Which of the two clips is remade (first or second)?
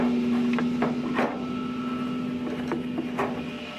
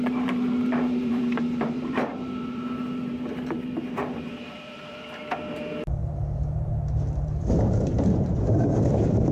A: second